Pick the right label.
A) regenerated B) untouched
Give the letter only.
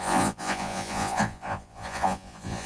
A